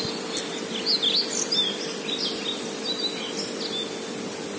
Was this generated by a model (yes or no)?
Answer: no